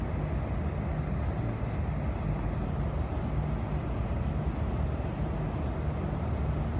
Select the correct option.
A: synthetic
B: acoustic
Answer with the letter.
B